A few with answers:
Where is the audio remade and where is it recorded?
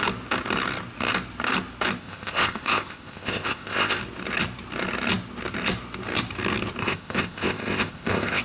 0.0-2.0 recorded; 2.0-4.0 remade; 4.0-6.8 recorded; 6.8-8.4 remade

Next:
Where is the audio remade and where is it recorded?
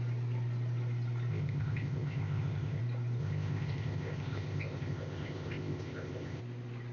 0.0-1.3 recorded; 1.3-2.8 remade; 2.8-3.2 recorded; 3.2-6.4 remade; 6.4-6.9 recorded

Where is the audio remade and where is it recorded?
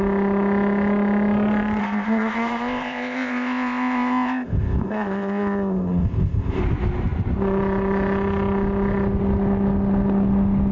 0.0-1.8 recorded; 1.8-6.6 remade; 6.6-10.7 recorded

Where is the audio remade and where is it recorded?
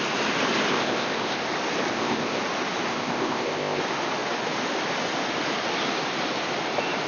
0.0-0.7 recorded; 0.7-1.4 remade; 1.4-1.9 recorded; 1.9-2.4 remade; 2.4-2.9 recorded; 2.9-3.8 remade; 3.8-7.1 recorded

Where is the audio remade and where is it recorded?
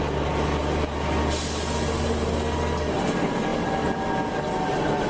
0.0-5.1 recorded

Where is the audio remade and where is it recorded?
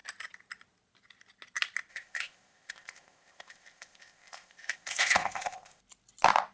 0.0-1.9 recorded; 1.9-5.8 remade; 5.8-6.5 recorded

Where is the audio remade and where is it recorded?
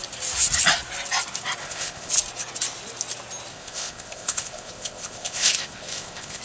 0.0-1.6 recorded; 1.6-2.1 remade; 2.1-3.5 recorded; 3.5-6.4 remade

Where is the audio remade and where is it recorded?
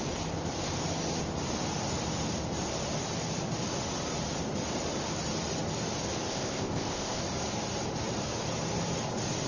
0.0-6.3 recorded; 6.3-7.2 remade; 7.2-9.5 recorded